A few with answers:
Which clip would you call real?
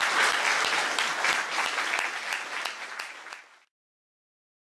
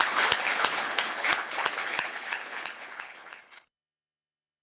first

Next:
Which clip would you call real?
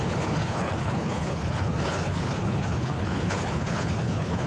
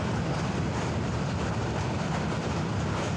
second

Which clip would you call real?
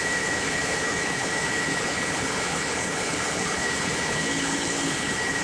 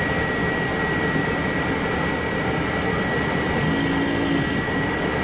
second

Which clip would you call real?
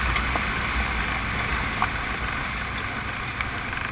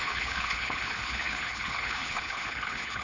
first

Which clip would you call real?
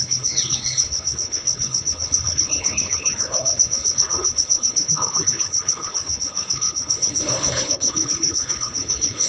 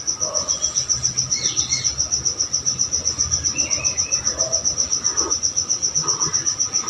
second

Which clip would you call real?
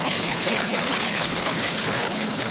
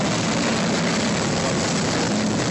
second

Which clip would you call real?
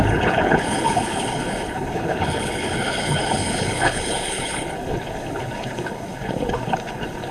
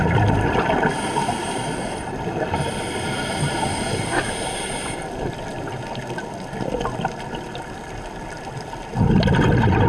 second